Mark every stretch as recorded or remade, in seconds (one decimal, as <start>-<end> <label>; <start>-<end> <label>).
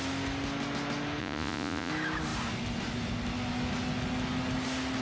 0.0-1.2 recorded; 1.2-1.9 remade; 1.9-5.0 recorded